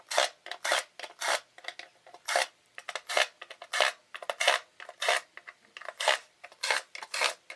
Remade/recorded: recorded